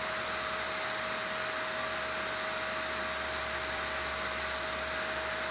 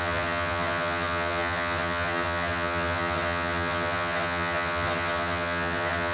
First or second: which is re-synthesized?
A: second